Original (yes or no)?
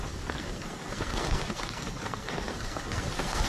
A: no